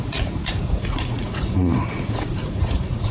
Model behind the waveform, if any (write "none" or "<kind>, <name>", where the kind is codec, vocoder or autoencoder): vocoder, Vocos